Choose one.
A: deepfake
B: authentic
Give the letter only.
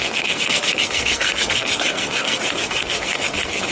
A